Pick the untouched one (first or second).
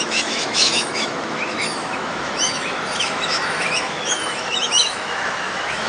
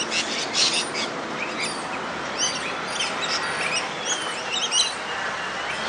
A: second